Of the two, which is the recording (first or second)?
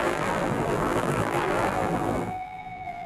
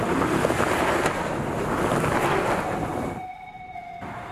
second